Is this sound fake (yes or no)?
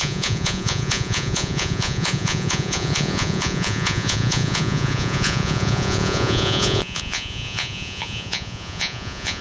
yes